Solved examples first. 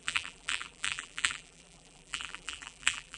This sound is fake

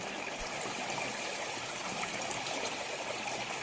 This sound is real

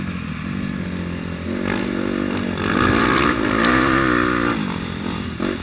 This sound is real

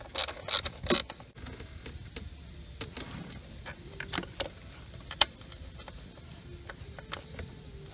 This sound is real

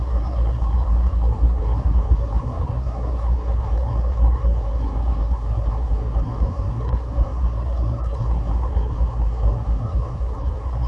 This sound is fake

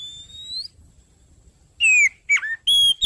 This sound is real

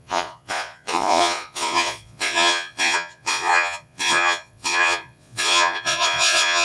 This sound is fake